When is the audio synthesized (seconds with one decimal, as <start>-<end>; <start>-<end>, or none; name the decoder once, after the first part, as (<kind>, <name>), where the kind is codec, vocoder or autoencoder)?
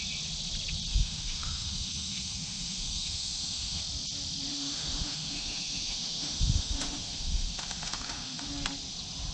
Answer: 0.9-3.8 (autoencoder, DAC-VAE); 4.5-8.5